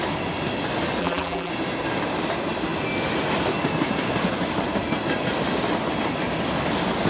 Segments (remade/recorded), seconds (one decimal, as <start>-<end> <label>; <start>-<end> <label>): 0.0-1.0 recorded; 1.0-1.5 remade; 1.5-7.1 recorded